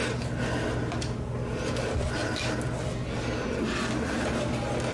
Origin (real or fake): real